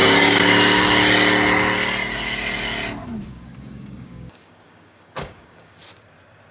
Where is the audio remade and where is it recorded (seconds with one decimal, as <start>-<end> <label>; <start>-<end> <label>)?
0.0-0.8 remade; 0.8-3.2 recorded; 3.2-5.8 remade; 5.8-6.5 recorded